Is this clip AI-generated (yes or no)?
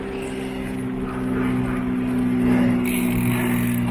no